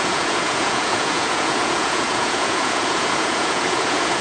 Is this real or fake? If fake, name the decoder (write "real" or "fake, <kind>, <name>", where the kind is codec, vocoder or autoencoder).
fake, vocoder, Vocos